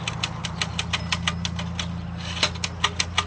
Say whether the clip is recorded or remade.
recorded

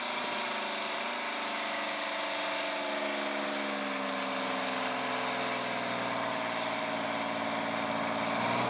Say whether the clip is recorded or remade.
recorded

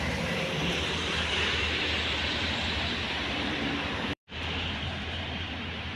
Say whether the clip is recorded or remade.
remade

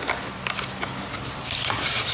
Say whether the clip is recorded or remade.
recorded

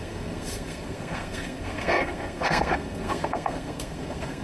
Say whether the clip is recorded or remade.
remade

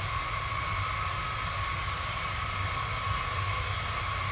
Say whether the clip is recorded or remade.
recorded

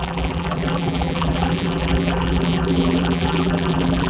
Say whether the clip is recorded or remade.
remade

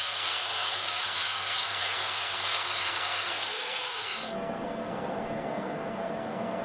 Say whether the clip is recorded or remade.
remade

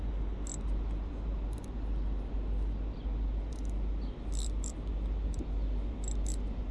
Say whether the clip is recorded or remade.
recorded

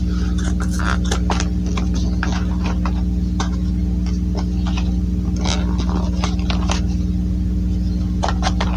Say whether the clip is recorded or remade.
recorded